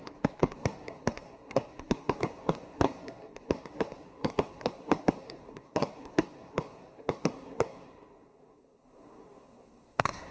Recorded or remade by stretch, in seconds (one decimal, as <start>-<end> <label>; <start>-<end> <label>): 0.0-10.3 remade